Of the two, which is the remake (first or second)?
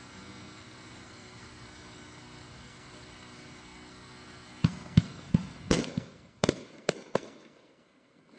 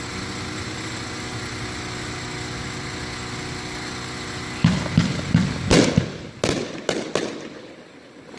first